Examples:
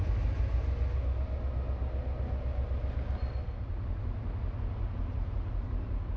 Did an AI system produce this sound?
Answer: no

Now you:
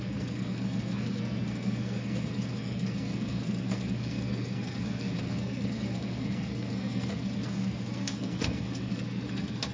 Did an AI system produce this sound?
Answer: yes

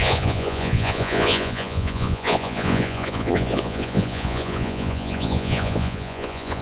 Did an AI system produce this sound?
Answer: yes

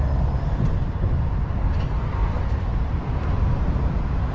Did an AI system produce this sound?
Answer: no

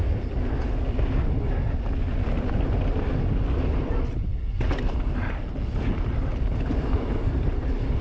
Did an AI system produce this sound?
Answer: no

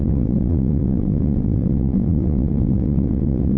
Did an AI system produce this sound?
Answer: yes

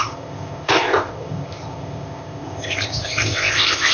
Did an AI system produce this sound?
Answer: yes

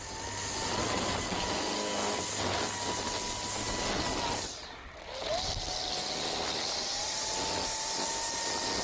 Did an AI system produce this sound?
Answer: no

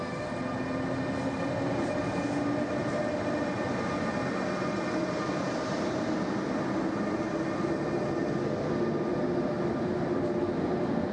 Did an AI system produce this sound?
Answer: no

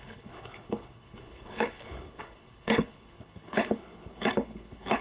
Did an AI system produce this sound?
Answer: yes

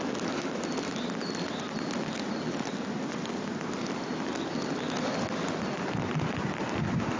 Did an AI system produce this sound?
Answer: no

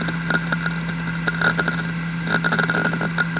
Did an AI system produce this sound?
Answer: no